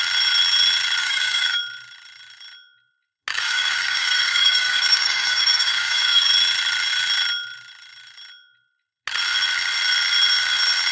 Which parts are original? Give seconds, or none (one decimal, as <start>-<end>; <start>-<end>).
0.0-1.0; 1.6-3.3; 6.3-10.9